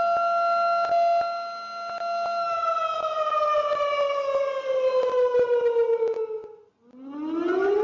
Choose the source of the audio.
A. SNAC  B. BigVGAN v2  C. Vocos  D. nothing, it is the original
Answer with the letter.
D